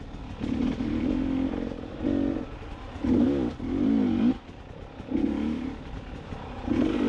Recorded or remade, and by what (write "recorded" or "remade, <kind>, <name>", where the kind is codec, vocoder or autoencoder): recorded